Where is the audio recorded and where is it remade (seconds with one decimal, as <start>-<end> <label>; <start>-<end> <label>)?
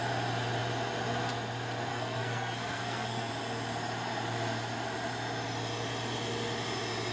0.0-1.9 recorded; 1.9-3.3 remade; 3.3-7.1 recorded